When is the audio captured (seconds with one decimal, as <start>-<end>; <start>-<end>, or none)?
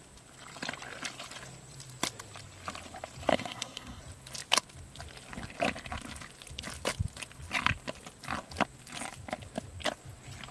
0.0-3.3; 4.0-10.5